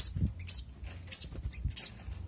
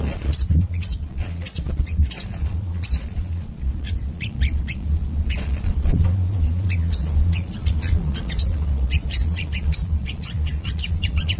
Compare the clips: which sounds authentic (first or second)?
first